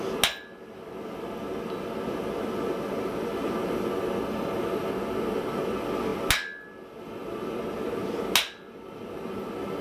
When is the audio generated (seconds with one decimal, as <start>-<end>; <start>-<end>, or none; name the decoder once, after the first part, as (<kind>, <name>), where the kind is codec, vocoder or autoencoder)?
none